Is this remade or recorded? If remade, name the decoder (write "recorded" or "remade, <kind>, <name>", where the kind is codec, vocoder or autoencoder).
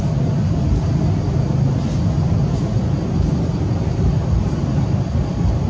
recorded